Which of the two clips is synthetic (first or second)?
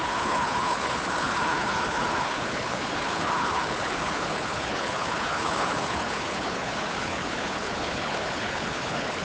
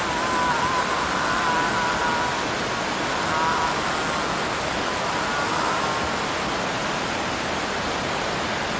first